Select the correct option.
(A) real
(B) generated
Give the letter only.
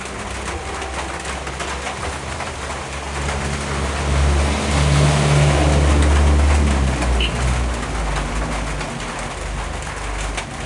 A